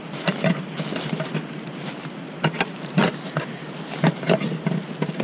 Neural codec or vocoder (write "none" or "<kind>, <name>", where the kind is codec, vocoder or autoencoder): none